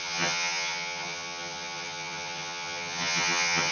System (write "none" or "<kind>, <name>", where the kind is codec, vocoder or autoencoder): vocoder, HiFi-GAN